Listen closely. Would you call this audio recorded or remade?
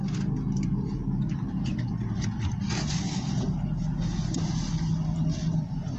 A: recorded